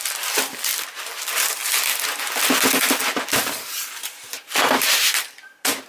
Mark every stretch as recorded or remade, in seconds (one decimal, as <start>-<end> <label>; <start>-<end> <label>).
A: 0.0-5.9 recorded